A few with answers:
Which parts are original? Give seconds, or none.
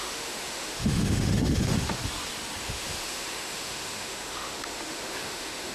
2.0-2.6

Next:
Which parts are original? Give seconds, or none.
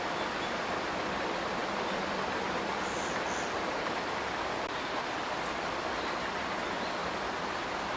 0.0-8.0